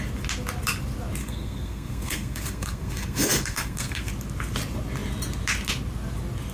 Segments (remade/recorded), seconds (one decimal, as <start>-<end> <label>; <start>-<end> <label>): 0.0-1.2 recorded; 1.2-4.1 remade; 4.1-6.5 recorded

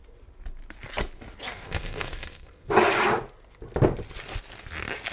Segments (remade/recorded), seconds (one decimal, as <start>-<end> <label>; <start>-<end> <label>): 0.0-1.5 recorded; 1.5-2.7 remade; 2.7-5.1 recorded

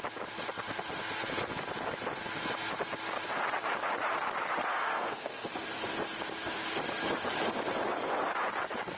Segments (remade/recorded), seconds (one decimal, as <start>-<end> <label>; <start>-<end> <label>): 0.0-4.7 recorded; 4.7-5.5 remade; 5.5-9.0 recorded

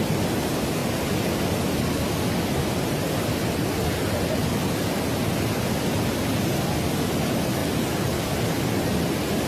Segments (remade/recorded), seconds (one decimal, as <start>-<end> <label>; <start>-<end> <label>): 0.0-9.5 recorded